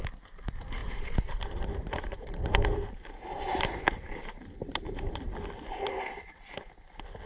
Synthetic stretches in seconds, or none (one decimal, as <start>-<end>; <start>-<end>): 0.8-5.2

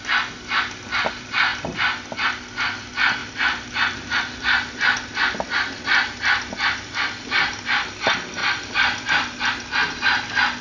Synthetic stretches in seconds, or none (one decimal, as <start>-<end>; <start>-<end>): 3.2-4.2

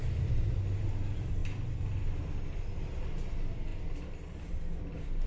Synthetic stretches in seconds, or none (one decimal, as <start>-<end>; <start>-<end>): none

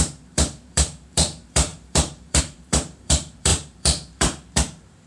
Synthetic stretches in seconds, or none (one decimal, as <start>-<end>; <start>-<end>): 0.0-5.1

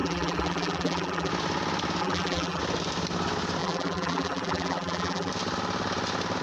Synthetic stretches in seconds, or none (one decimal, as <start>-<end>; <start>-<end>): 0.0-1.3; 2.0-2.6; 3.6-5.3

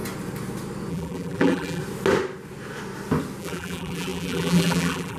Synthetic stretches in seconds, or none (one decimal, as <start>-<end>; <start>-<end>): 0.9-1.8; 3.4-5.2

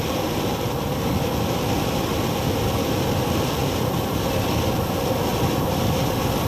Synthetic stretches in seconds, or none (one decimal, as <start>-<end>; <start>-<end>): 3.6-4.3; 5.3-5.8